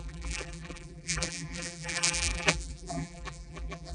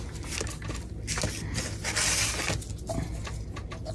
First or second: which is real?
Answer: second